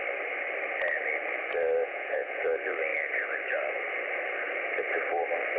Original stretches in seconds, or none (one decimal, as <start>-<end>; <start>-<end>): 0.0-1.8; 2.4-5.6